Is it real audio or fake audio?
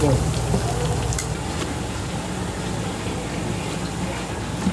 real